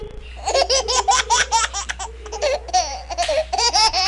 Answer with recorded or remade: remade